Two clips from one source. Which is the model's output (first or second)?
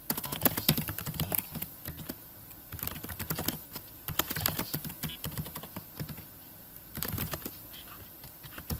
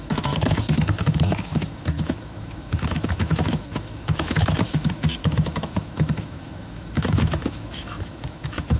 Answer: second